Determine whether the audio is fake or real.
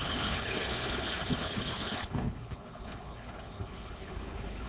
fake